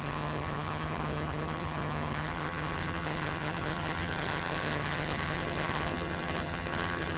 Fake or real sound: fake